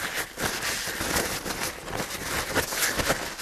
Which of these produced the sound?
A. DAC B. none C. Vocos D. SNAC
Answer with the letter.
B